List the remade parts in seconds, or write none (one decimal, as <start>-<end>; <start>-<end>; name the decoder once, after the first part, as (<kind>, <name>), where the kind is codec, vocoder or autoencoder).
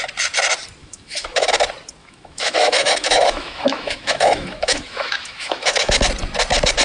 0.8-1.5 (autoencoder, DAC-VAE); 2.0-6.0